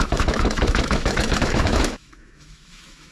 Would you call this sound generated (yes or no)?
yes